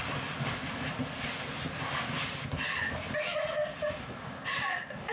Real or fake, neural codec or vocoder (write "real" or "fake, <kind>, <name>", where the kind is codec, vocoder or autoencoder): real